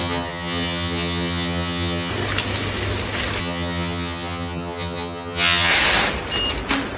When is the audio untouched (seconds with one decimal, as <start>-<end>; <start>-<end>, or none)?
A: 2.1-3.4; 5.7-7.0